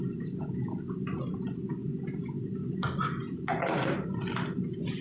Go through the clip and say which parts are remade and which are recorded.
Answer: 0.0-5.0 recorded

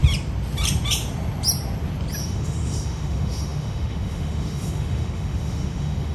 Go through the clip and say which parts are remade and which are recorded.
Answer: 0.0-2.2 recorded; 2.2-6.1 remade